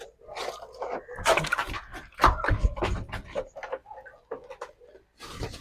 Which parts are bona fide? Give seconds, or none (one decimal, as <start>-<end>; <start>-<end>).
0.0-5.6